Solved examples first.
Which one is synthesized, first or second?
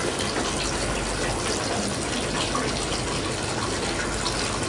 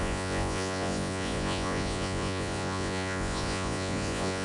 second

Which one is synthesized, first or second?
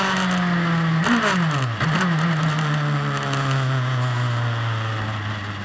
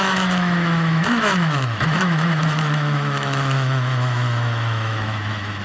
second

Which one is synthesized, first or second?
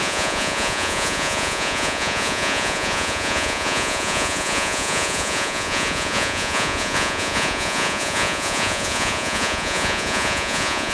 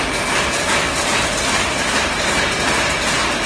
first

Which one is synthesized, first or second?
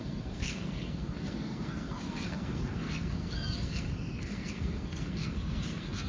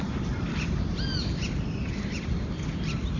first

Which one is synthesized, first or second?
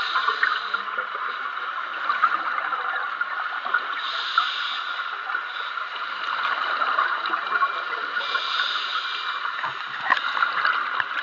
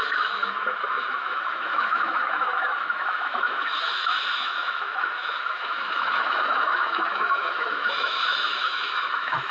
second